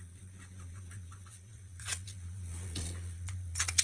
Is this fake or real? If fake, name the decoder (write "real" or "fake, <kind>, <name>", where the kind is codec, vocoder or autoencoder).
fake, vocoder, Vocos